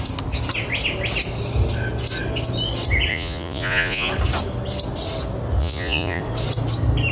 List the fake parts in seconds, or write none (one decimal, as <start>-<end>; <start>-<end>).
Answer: 3.1-4.1; 5.6-6.2